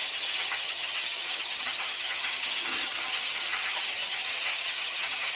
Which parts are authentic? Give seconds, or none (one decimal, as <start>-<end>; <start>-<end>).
none